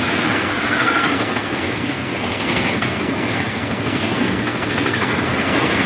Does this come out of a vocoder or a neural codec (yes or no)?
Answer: yes